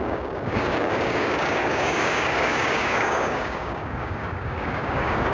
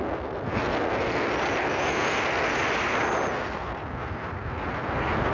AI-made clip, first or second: first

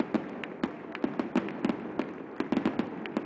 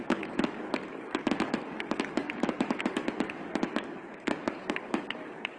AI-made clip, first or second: second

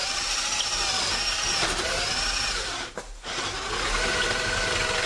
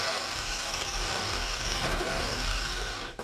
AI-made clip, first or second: second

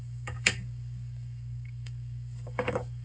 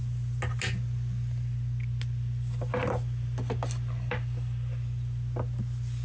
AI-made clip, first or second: first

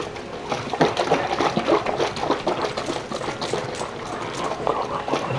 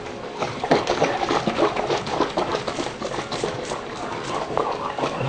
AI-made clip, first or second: second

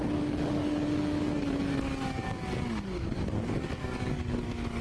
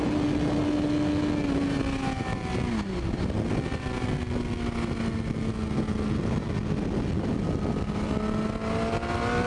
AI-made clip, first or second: first